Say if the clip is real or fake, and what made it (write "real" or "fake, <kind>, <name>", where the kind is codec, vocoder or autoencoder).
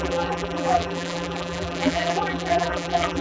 fake, vocoder, BigVGAN v2